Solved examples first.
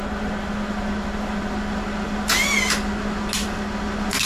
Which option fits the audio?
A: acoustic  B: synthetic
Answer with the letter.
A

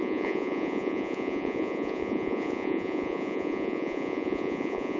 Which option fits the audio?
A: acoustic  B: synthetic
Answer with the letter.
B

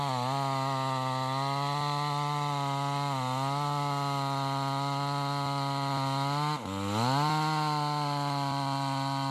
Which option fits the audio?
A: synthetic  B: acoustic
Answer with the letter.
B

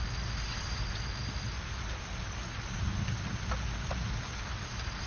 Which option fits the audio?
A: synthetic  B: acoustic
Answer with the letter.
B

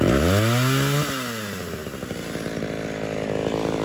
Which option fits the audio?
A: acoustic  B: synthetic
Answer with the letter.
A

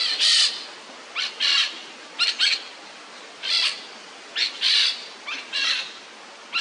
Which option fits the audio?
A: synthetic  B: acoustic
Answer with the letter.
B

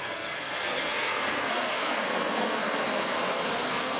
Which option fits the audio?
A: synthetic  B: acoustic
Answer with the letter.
A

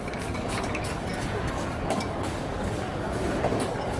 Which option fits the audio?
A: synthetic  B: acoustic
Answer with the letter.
A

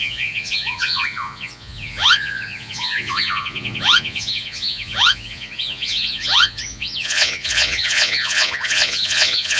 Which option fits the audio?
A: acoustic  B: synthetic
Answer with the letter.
B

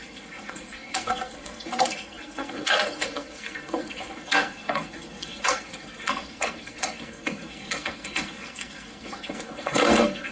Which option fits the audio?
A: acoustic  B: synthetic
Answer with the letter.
B